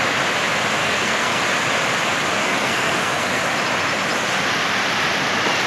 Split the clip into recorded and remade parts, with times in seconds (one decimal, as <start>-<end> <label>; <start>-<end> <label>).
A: 0.0-0.8 recorded; 0.8-1.4 remade; 1.4-2.4 recorded; 2.4-3.4 remade; 3.4-5.7 recorded